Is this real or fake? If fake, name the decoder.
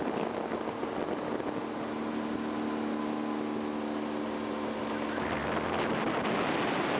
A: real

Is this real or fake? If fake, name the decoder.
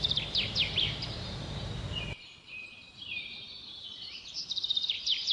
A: fake, vocoder, BigVGAN v2